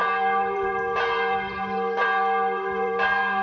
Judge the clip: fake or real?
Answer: fake